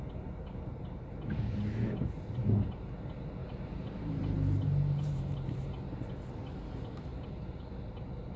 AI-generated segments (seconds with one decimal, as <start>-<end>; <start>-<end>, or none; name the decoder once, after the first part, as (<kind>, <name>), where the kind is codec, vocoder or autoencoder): 3.4-5.8 (vocoder, BigVGAN v2); 7.1-7.6